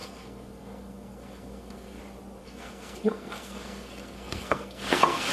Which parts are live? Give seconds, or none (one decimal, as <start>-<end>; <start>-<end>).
2.0-2.4